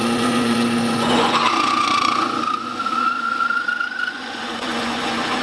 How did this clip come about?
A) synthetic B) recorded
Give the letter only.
A